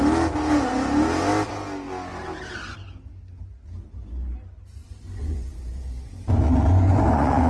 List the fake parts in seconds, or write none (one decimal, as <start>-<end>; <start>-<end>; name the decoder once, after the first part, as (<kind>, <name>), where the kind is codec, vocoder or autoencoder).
4.7-7.5 (vocoder, Vocos)